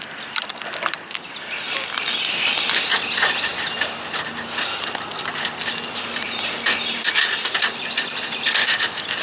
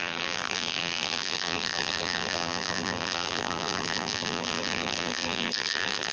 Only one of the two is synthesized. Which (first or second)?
second